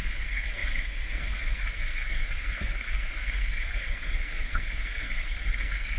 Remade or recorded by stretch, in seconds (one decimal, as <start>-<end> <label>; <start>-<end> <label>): 0.0-6.0 remade